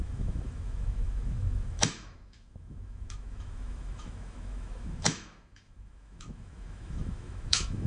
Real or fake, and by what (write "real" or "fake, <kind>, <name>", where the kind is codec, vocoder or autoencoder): fake, autoencoder, DAC-VAE